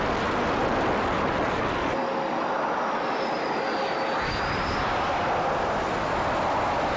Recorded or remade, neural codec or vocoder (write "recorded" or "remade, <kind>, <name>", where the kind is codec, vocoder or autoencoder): recorded